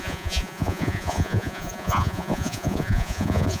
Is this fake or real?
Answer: fake